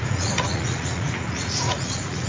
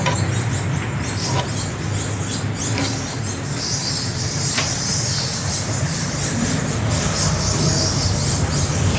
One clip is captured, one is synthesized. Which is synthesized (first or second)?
first